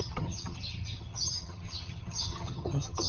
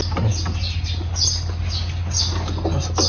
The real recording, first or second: second